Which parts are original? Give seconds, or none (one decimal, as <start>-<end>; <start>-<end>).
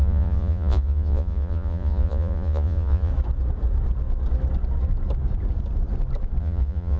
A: 3.1-6.4